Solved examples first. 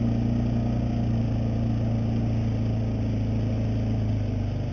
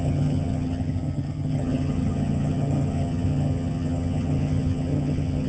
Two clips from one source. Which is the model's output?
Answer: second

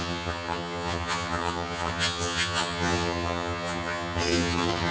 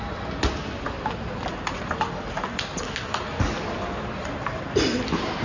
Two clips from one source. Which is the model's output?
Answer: first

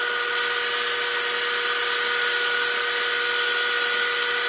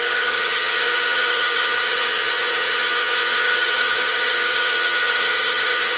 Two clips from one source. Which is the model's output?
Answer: second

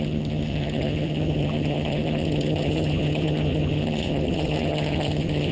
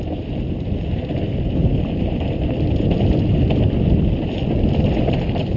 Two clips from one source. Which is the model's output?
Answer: first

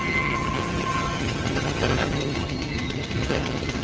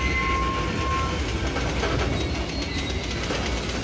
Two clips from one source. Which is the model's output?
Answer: first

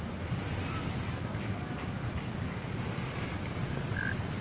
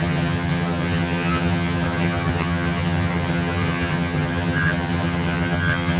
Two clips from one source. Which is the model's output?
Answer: second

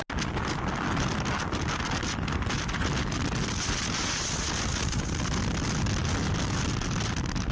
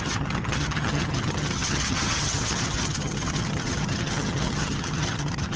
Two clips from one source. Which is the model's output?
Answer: second